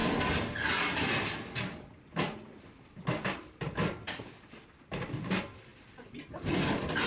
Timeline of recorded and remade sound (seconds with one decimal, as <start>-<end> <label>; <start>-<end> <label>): 0.0-7.1 recorded